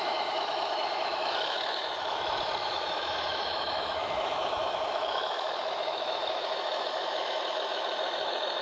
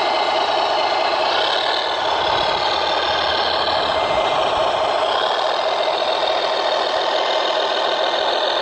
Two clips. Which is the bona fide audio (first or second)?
second